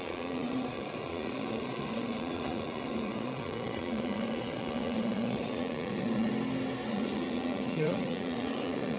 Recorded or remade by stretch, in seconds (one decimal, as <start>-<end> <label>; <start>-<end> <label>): 0.0-6.3 remade; 6.3-6.9 recorded; 6.9-9.0 remade